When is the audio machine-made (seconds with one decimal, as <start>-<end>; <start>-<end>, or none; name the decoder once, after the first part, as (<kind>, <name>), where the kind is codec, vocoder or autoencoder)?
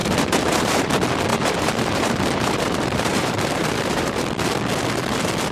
0.0-0.9 (vocoder, BigVGAN v2); 1.3-4.2